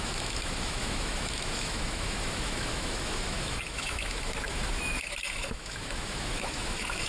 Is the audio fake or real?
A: fake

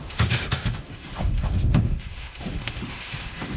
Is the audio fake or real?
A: fake